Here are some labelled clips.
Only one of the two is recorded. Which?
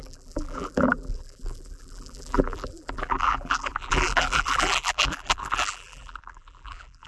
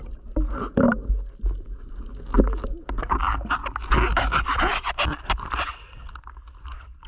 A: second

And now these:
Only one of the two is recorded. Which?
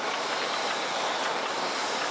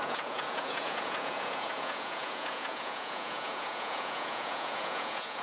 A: first